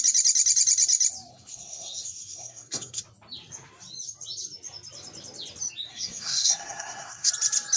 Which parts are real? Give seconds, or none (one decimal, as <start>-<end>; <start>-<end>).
0.0-1.3; 3.0-5.9; 7.3-7.8